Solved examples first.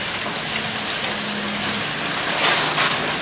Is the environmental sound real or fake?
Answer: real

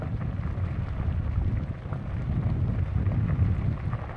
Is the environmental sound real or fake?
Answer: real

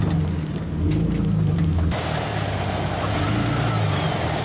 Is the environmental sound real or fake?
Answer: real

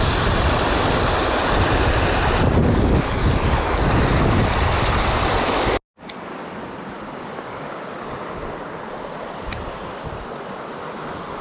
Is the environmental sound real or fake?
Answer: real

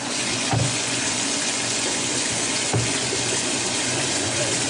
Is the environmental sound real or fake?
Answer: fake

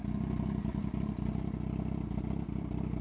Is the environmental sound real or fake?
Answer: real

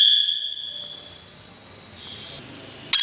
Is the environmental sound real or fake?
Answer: real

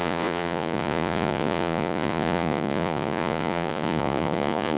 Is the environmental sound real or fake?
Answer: fake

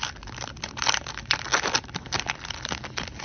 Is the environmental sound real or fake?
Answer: real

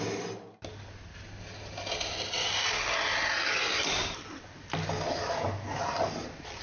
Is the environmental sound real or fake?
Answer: real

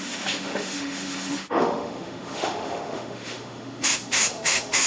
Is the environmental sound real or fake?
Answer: fake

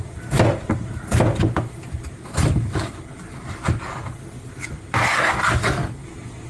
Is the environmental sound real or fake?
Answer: real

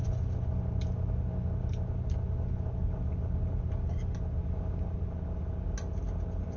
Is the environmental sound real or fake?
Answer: real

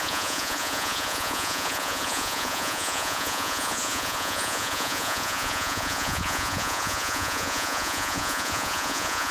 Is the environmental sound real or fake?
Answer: fake